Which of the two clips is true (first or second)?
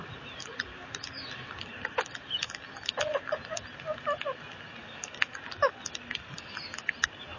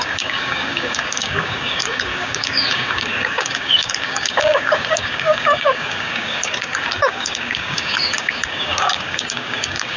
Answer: first